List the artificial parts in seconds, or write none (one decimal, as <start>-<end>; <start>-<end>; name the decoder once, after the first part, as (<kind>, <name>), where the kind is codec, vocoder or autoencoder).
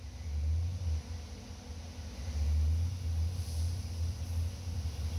none